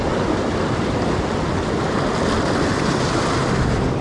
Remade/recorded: recorded